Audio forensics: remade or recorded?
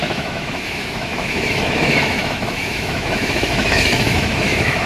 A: remade